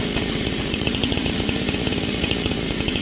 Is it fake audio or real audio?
fake